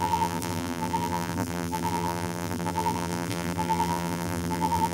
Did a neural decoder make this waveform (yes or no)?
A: yes